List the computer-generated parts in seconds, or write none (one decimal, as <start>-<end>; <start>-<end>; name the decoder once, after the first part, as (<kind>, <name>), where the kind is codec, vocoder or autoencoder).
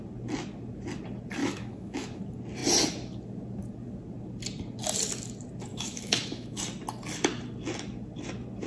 1.4-2.2 (autoencoder, DAC-VAE); 5.7-6.6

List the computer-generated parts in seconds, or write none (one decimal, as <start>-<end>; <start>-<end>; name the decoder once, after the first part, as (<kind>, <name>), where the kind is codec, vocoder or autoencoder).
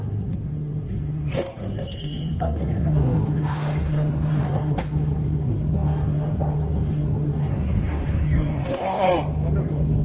0.0-9.1 (codec, SNAC); 9.6-10.0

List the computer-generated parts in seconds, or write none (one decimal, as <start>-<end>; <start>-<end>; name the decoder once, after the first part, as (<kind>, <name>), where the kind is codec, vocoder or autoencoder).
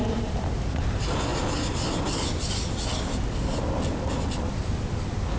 none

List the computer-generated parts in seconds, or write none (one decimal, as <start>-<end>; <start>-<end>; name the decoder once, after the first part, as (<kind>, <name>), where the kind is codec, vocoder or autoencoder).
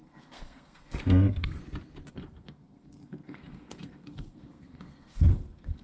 0.0-1.6 (codec, SNAC); 2.1-5.8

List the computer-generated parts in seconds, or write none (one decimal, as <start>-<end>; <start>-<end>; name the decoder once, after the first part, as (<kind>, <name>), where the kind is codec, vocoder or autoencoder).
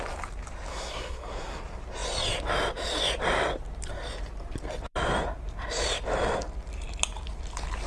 0.7-1.6 (codec, SNAC)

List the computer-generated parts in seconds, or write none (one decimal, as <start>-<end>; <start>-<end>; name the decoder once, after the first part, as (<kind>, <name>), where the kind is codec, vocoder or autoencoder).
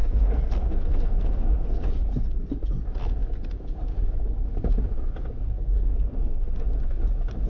0.0-1.8 (codec, SNAC); 5.4-6.4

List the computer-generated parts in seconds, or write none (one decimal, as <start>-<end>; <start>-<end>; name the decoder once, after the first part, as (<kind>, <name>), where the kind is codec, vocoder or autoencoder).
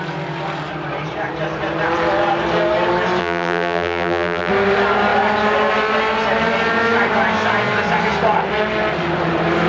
3.2-4.5 (vocoder, BigVGAN v2)